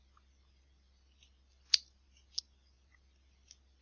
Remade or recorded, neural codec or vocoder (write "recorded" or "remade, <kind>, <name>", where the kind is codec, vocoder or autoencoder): recorded